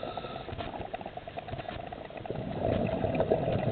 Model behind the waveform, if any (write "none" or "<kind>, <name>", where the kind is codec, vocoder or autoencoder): none